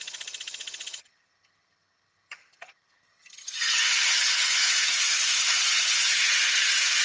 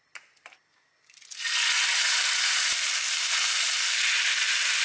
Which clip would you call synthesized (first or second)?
first